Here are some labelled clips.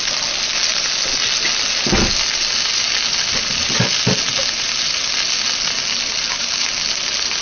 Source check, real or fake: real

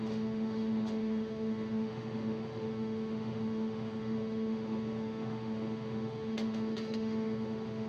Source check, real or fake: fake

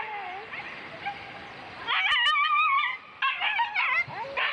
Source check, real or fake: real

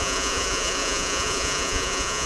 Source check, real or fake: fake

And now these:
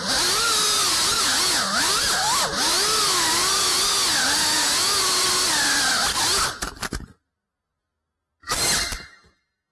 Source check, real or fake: real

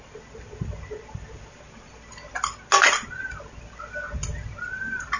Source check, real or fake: real